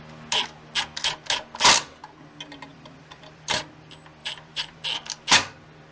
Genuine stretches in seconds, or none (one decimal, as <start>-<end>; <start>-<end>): 0.0-2.7; 3.6-4.2; 4.8-5.9